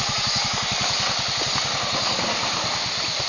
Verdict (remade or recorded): recorded